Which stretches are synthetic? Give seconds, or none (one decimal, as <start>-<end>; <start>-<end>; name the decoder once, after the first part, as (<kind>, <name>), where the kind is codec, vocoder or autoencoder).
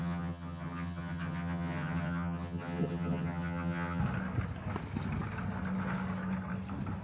0.0-4.0 (vocoder, HiFi-GAN)